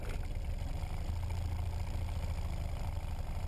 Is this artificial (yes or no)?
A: no